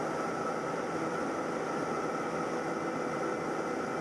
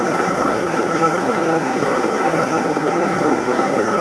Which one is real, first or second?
first